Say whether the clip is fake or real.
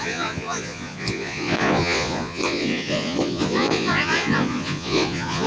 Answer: fake